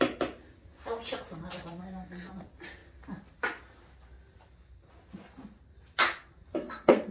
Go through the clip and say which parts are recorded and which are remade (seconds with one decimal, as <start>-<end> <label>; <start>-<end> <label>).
0.0-6.5 recorded; 6.5-7.1 remade